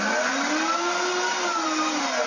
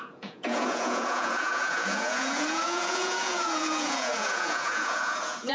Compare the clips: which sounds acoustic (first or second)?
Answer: first